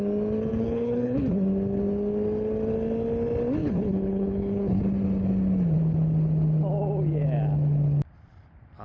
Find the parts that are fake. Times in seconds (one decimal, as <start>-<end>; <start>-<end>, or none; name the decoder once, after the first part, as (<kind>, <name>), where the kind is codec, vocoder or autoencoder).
0.5-1.2 (codec, HILCodec); 3.6-4.8

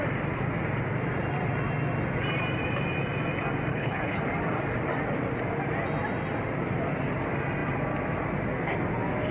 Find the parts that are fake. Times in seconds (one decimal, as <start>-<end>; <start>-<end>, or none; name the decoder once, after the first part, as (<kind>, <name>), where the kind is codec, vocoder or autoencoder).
3.7-4.2 (codec, HILCodec)

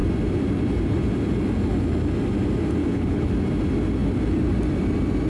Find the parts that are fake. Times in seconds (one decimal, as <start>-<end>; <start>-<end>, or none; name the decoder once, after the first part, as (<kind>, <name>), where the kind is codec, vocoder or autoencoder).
2.8-3.3 (codec, HILCodec)

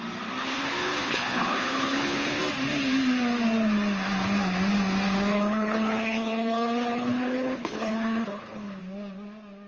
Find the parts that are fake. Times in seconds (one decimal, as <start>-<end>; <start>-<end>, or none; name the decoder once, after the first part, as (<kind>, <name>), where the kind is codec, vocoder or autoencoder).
0.4-2.4 (codec, HILCodec); 5.3-8.8

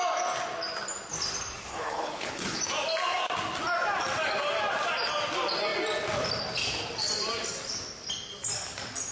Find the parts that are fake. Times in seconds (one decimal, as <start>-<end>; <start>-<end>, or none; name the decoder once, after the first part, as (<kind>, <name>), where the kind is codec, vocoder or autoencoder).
1.6-2.6 (codec, HILCodec)

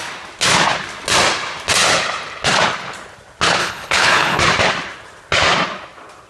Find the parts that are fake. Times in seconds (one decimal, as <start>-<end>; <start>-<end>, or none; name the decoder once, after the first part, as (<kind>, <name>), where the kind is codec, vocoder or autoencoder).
3.6-4.4 (codec, HILCodec)

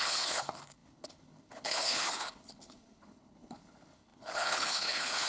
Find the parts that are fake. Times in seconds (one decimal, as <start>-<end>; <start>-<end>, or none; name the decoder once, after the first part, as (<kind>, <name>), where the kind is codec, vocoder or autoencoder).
0.0-5.3 (codec, HILCodec)

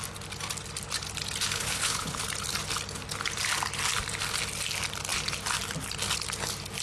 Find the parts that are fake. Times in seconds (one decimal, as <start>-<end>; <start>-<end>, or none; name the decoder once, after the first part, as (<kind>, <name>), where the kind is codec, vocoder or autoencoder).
1.6-2.1 (codec, HILCodec)